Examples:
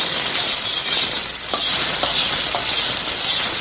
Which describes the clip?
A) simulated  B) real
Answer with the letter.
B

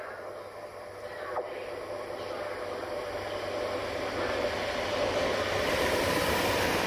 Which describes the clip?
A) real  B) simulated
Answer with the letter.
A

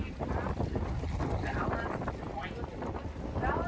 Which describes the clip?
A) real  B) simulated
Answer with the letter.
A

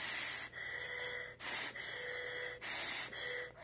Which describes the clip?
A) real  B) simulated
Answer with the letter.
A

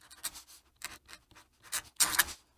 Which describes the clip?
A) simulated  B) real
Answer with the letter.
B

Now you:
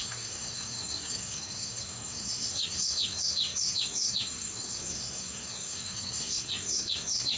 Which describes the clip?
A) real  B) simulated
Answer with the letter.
B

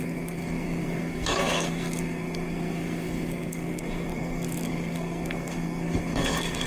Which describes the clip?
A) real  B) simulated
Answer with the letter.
B